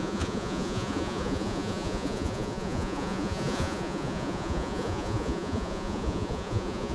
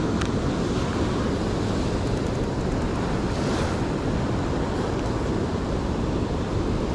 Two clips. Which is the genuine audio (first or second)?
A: second